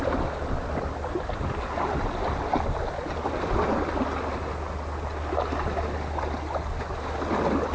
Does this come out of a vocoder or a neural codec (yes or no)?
no